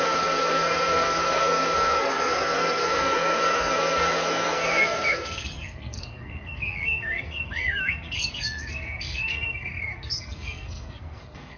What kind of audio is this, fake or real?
fake